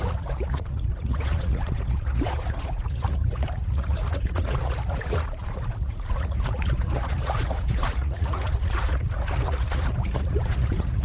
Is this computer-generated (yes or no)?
yes